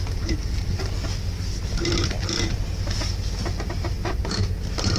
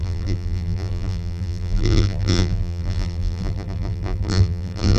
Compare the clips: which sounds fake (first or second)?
second